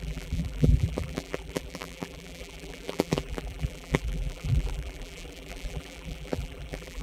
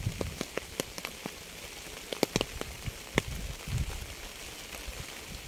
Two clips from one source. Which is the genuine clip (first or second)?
second